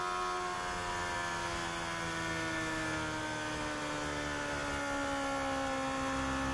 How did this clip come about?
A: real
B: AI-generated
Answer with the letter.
A